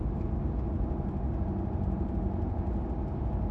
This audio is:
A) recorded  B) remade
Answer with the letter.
A